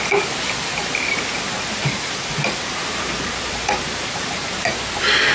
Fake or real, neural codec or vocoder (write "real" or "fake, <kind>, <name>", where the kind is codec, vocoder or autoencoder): fake, vocoder, BigVGAN v2